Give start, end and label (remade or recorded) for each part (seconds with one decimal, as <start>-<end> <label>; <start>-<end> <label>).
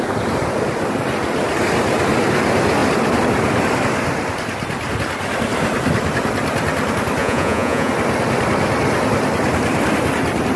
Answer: 0.0-7.2 recorded; 7.2-7.9 remade; 7.9-10.6 recorded